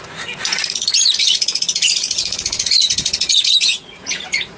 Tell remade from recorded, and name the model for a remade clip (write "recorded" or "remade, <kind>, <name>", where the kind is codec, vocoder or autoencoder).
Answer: remade, vocoder, Vocos